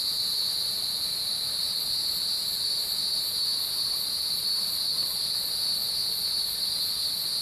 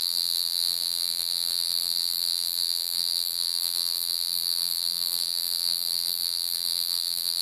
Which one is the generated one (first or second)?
second